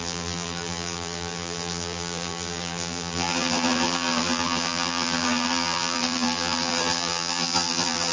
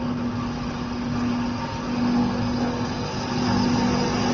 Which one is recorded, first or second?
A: second